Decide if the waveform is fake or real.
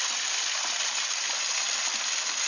real